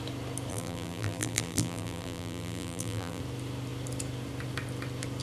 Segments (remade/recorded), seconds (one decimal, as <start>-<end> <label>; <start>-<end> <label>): 0.0-0.5 recorded; 0.5-3.2 remade; 3.2-5.2 recorded